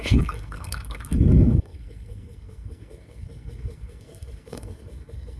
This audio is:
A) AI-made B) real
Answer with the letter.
A